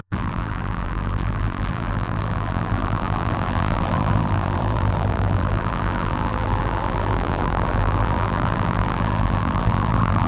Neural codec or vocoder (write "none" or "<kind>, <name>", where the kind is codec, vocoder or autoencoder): vocoder, BigVGAN v2